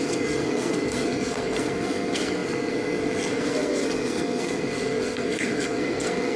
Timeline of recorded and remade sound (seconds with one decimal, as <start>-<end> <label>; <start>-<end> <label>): 0.0-6.4 remade